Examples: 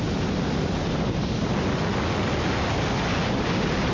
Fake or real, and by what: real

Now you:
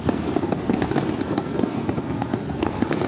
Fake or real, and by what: fake, codec, SNAC